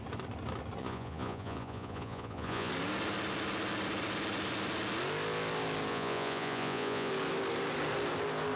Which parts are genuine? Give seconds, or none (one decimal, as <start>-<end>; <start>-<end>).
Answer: 0.0-0.8; 2.7-5.9; 7.1-8.6